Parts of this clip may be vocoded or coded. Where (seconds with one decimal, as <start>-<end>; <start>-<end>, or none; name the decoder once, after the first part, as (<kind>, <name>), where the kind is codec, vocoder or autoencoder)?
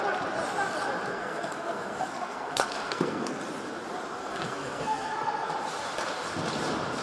1.1-3.4 (codec, SNAC); 4.2-5.5